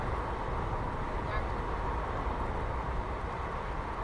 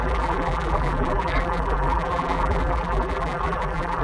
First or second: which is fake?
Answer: second